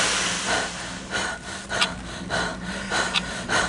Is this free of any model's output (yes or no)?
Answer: yes